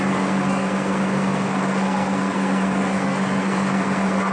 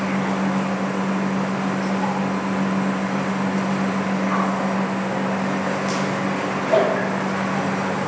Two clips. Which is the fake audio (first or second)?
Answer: first